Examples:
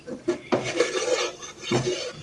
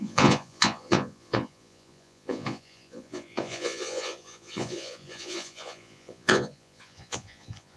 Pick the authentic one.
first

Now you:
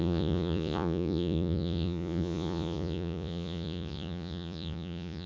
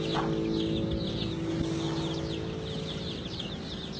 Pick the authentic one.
second